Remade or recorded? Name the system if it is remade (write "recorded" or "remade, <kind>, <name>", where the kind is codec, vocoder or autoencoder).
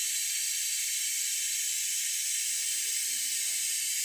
recorded